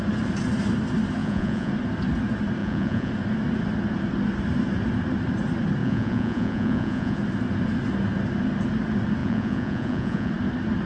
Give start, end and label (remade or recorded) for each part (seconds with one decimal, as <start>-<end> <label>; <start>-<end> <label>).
0.0-1.2 recorded; 1.2-1.7 remade; 1.7-2.6 recorded; 2.6-3.1 remade; 3.1-5.8 recorded; 5.8-7.2 remade; 7.2-9.2 recorded; 9.2-10.3 remade; 10.3-10.9 recorded